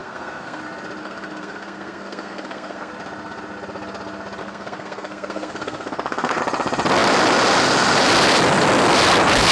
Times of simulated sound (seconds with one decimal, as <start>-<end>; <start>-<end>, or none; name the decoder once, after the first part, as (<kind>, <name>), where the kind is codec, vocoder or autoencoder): 0.0-0.6 (codec, SNAC); 1.0-2.9; 4.4-6.4